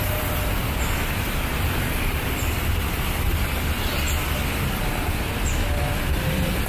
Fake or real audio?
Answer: real